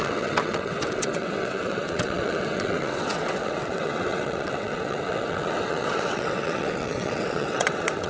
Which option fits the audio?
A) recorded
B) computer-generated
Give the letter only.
B